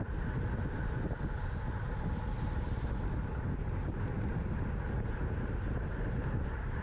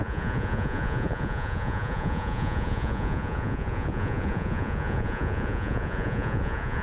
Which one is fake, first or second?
second